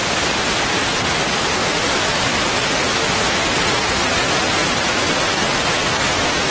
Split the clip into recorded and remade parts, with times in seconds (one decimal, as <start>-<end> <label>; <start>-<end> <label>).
0.0-6.5 recorded